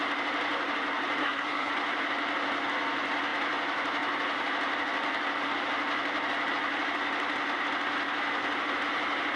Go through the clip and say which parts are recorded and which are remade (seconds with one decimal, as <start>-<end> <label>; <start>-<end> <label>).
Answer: 0.0-1.2 recorded; 1.2-1.7 remade; 1.7-9.4 recorded